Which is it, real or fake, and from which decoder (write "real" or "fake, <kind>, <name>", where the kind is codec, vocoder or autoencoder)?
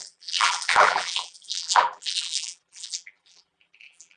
fake, vocoder, BigVGAN v2